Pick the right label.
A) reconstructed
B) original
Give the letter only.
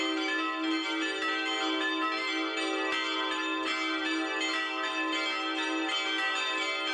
B